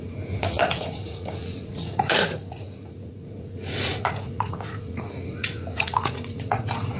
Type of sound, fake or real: fake